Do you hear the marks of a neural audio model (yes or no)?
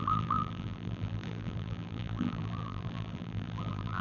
yes